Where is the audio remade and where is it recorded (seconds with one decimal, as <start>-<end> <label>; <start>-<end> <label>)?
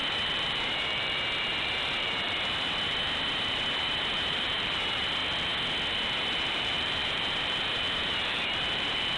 0.0-5.2 remade; 5.2-5.9 recorded; 5.9-9.2 remade